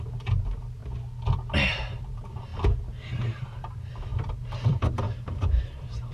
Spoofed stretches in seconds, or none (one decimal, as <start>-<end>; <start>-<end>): 0.0-0.8; 1.7-2.5; 3.1-6.1

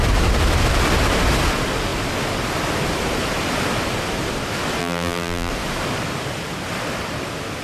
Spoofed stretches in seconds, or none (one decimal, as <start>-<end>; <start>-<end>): 4.8-5.5

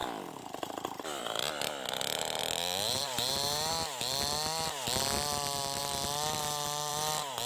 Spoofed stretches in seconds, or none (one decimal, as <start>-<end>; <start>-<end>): 2.4-3.7

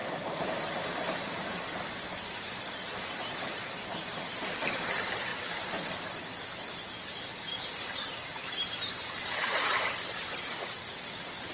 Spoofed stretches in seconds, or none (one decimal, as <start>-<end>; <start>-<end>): 0.0-1.6; 5.3-5.9; 8.3-9.7

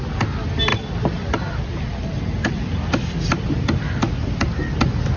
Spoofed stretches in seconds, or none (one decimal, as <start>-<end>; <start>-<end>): 0.7-3.8

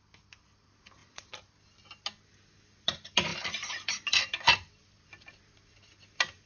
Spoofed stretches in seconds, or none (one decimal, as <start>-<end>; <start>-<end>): 1.0-1.5; 3.3-5.2

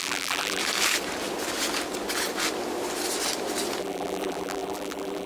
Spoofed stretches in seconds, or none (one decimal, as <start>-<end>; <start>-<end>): 0.0-0.6; 3.8-5.3